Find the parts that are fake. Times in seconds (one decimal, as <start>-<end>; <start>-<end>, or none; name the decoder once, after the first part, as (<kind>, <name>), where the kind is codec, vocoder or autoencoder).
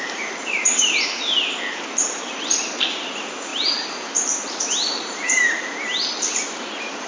0.0-7.1 (vocoder, BigVGAN v2)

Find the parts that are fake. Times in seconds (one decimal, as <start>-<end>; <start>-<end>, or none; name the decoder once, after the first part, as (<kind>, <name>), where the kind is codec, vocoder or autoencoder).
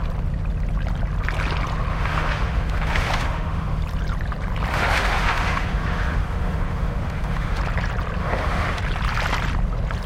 1.9-3.8 (autoencoder, DAC-VAE); 4.7-7.6; 8.2-8.8